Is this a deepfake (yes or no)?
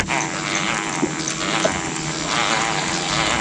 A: no